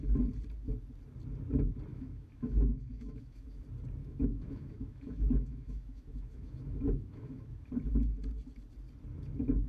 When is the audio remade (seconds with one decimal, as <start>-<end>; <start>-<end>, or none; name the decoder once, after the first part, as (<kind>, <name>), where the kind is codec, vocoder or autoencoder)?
1.9-3.6 (autoencoder, DAC-VAE); 4.0-7.7